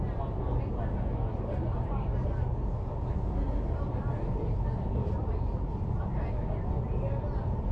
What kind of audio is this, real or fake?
real